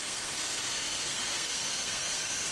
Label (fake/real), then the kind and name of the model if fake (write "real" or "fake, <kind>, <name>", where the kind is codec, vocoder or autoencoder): fake, codec, SNAC